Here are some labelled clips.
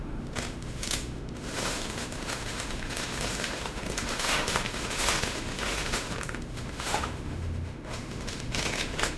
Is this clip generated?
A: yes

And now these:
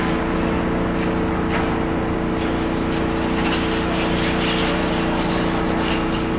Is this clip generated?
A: no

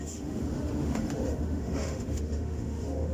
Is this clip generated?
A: yes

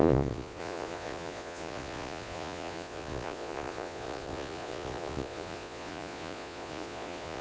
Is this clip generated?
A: yes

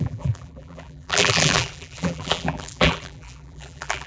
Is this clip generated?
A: yes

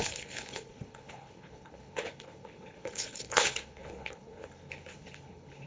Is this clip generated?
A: yes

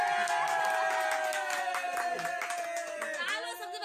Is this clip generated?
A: no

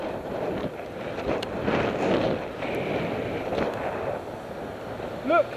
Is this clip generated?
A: no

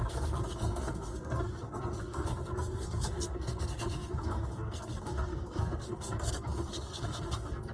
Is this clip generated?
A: yes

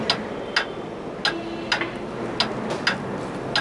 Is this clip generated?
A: no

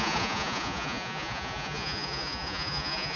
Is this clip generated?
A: yes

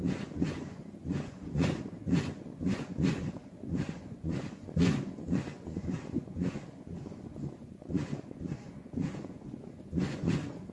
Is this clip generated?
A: yes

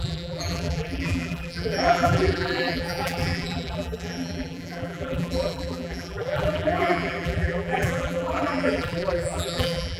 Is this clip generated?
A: yes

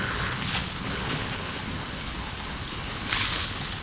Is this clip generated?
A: yes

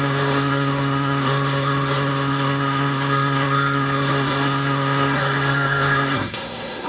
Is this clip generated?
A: yes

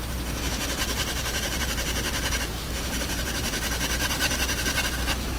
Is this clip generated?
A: yes